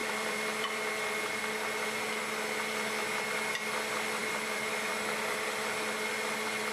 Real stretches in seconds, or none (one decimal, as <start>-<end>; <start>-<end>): 1.4-4.2; 4.9-6.7